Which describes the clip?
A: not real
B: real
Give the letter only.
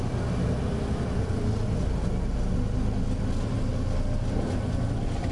B